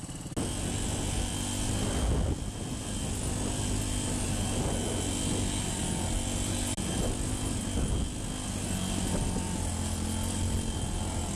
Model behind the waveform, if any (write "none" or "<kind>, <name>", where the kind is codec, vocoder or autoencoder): none